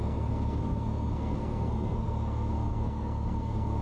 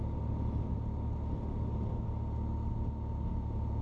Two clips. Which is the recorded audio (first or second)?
second